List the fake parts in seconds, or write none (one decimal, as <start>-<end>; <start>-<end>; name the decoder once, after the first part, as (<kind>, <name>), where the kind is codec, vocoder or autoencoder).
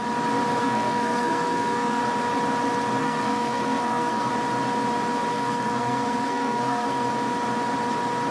0.6-2.0 (codec, SNAC); 3.0-4.3; 5.3-7.1